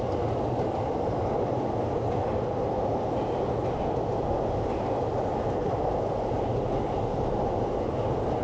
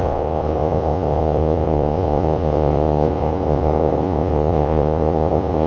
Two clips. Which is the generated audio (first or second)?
second